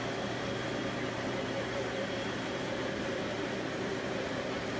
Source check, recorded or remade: remade